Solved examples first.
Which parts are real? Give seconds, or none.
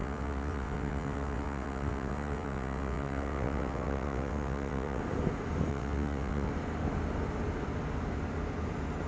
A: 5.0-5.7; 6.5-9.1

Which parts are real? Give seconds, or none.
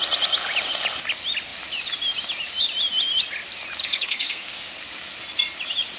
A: 0.0-3.8; 4.7-6.0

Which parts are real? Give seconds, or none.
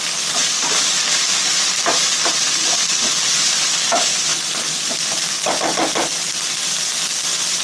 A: 0.0-0.4; 3.6-7.6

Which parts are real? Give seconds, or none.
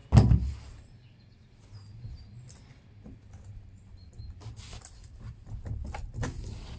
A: 0.0-6.8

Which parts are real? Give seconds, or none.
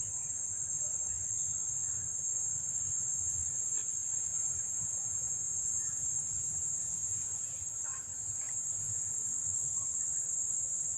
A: 0.0-4.3; 7.7-8.2; 9.2-11.0